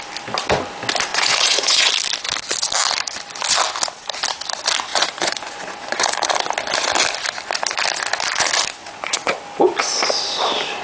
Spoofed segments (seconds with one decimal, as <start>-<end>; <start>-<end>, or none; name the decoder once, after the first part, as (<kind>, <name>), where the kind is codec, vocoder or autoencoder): 1.1-1.9 (vocoder, Vocos); 4.9-6.3; 8.8-9.4